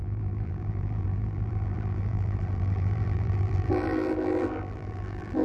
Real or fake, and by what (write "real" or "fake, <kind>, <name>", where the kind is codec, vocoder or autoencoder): fake, vocoder, BigVGAN v2